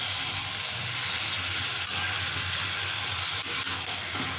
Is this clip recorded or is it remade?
recorded